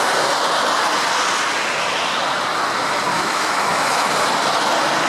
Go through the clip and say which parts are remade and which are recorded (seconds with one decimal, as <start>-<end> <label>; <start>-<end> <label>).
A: 0.0-3.1 recorded; 3.1-4.1 remade; 4.1-5.1 recorded